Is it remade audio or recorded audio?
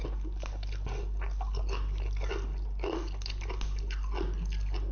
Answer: recorded